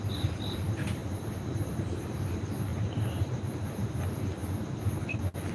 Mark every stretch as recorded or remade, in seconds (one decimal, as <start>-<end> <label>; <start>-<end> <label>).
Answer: 0.0-2.7 remade; 2.7-3.3 recorded; 3.3-4.4 remade; 4.4-5.5 recorded